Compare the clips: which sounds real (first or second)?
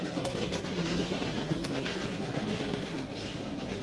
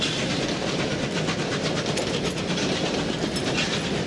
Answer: second